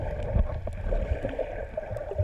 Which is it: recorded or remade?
recorded